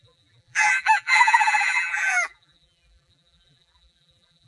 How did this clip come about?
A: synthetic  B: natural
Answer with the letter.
A